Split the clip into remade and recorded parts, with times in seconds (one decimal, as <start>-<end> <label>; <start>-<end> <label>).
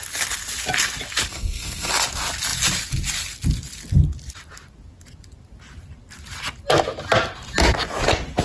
0.0-1.3 recorded; 1.3-1.9 remade; 1.9-8.4 recorded